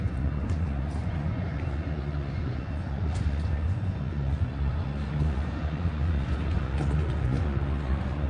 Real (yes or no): no